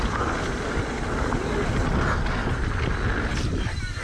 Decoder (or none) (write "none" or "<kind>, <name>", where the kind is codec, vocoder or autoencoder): none